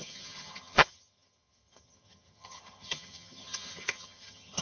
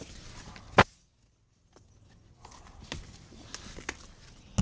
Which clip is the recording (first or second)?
second